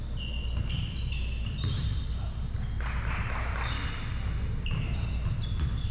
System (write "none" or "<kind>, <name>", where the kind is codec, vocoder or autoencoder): none